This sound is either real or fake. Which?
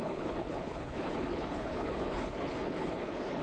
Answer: fake